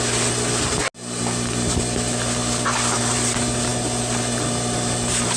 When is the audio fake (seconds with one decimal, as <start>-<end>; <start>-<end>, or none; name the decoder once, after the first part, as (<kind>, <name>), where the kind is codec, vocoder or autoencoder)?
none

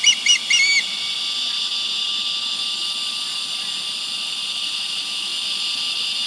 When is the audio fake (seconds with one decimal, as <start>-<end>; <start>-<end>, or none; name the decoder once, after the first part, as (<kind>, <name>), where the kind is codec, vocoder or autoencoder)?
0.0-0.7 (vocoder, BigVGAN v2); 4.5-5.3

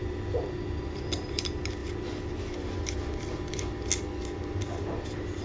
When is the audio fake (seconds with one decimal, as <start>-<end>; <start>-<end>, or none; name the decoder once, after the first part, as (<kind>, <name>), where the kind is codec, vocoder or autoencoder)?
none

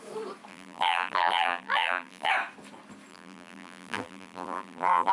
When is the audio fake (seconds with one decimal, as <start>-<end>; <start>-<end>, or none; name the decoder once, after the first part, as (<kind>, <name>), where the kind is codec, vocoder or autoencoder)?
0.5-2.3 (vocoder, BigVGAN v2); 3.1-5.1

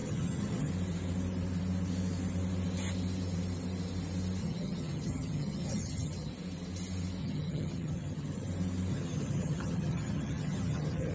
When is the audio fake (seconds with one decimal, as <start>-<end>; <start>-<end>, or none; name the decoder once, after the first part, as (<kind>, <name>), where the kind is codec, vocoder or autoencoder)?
0.0-0.7 (vocoder, HiFi-GAN); 4.4-6.3; 7.2-8.5; 8.9-11.1

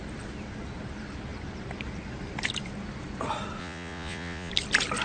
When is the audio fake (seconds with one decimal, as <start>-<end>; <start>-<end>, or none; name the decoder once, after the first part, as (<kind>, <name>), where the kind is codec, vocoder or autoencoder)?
3.6-4.5 (vocoder, Vocos)

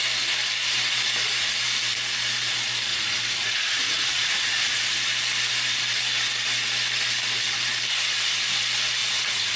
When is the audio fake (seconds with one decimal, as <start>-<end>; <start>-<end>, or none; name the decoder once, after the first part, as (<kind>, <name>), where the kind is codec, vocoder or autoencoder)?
2.9-4.8 (vocoder, Vocos); 9.0-9.6

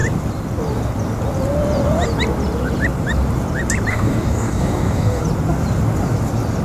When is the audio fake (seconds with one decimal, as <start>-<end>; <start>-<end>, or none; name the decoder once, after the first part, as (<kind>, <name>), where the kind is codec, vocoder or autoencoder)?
3.9-5.2 (codec, DAC)